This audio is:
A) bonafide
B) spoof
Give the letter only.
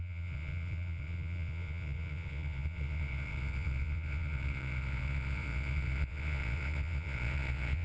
B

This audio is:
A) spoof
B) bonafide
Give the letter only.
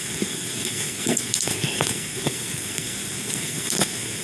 A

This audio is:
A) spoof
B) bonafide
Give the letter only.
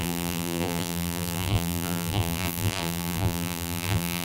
A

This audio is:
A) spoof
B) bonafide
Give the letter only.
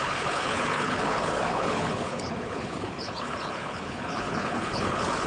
A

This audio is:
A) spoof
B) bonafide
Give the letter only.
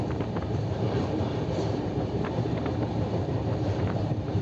A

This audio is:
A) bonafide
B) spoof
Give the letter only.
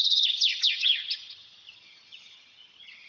B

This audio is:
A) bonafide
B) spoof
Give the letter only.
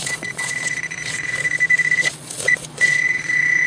B